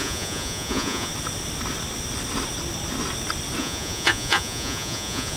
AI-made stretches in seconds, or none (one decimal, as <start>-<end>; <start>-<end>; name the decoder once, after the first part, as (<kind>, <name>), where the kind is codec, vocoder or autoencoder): 0.0-1.1 (vocoder, Vocos); 3.6-5.4